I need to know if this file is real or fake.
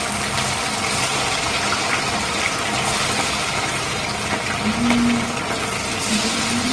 real